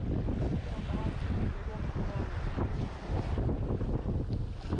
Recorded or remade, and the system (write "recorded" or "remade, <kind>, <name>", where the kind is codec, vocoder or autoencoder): recorded